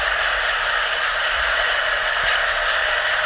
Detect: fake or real real